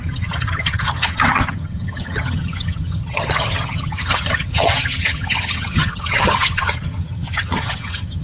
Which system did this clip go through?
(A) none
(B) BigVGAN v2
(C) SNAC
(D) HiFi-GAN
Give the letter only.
D